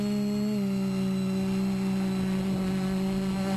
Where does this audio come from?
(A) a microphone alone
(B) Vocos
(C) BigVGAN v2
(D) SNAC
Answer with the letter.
A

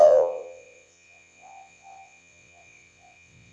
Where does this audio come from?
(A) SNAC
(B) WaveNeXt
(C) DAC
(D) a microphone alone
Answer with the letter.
B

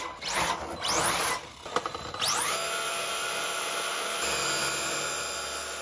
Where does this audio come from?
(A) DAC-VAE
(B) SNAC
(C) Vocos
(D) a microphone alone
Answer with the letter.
D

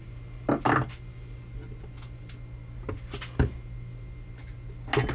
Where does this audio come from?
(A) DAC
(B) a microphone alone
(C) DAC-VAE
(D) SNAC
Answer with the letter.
B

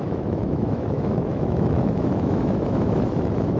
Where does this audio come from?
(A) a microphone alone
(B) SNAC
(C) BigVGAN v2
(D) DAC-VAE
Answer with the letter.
D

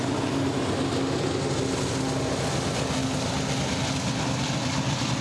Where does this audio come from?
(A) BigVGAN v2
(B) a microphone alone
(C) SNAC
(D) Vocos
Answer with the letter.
B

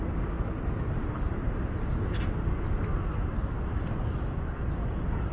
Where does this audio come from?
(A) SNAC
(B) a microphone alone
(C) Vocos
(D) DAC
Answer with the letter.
B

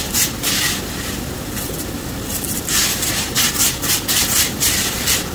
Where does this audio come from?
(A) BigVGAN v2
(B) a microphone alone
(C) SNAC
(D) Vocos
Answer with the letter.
A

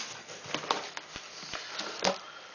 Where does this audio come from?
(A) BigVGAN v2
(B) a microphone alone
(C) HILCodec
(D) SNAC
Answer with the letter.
B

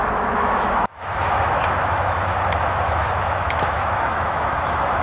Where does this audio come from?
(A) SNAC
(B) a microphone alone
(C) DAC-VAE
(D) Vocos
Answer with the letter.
C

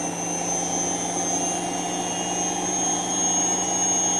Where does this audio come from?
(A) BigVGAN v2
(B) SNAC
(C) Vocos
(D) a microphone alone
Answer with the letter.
D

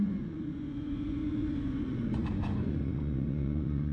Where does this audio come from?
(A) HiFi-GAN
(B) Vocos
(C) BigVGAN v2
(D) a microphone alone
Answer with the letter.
B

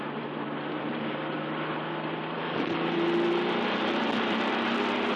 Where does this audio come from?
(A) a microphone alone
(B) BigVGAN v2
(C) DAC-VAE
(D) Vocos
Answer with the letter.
B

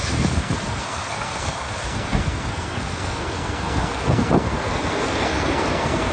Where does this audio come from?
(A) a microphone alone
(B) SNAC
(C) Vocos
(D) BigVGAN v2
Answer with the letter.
B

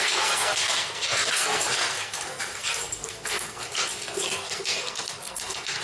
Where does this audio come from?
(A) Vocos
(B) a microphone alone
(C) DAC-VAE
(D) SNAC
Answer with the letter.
D